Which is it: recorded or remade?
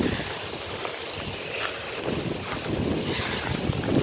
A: recorded